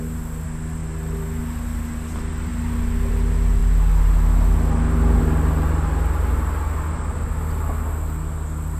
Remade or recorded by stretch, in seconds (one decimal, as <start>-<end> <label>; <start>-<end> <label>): 0.0-8.8 recorded